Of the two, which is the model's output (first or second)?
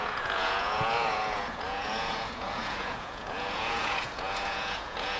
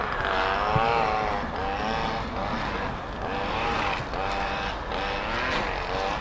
first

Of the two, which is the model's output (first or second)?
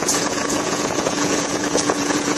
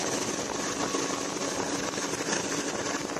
first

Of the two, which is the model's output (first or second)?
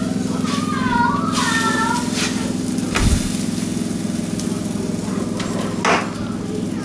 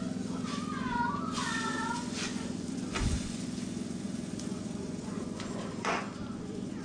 second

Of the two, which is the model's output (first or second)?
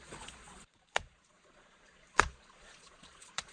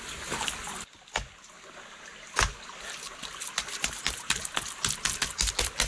first